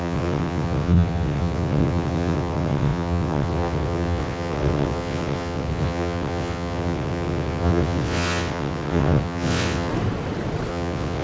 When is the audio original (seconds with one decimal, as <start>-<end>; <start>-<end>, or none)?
9.9-10.7